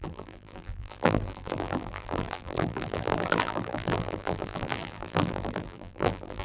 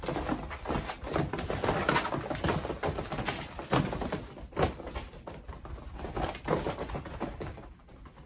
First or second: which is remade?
first